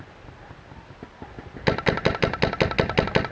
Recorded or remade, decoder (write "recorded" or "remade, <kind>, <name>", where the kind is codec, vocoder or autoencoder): recorded